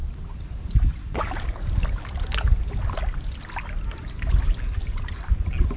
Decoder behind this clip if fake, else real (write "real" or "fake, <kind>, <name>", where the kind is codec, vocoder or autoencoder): real